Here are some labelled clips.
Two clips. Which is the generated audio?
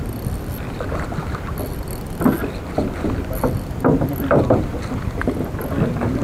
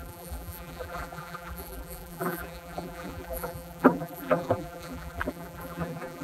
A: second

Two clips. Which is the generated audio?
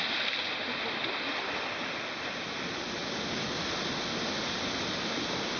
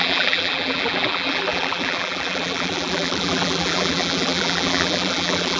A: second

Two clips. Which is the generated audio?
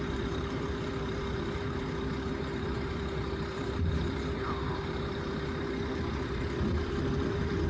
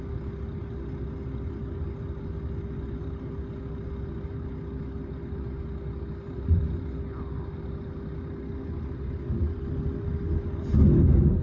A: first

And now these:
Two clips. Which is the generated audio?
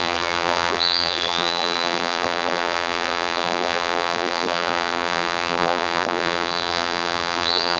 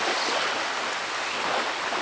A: first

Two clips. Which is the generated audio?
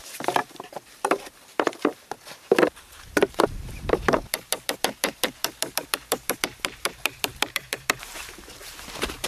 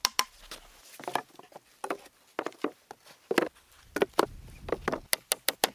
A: first